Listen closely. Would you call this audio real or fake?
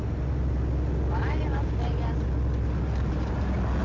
real